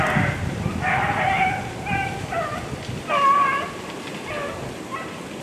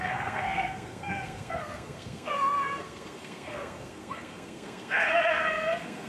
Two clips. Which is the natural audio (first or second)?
first